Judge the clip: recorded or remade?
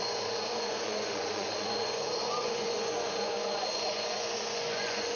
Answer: remade